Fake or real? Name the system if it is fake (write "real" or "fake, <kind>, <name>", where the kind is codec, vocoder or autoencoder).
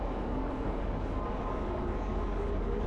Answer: fake, codec, DAC